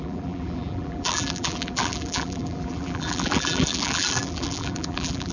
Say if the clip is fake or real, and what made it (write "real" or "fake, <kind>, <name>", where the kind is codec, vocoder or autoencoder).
fake, vocoder, BigVGAN v2